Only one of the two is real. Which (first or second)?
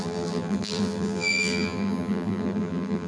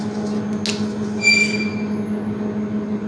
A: second